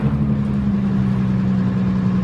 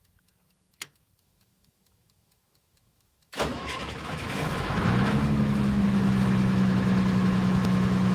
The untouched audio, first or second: first